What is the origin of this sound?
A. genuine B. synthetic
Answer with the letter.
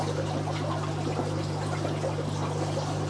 B